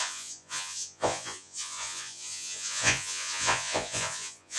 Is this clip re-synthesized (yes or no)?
yes